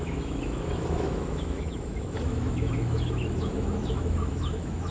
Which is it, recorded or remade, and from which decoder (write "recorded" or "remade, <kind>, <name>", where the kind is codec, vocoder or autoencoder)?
remade, autoencoder, DAC-VAE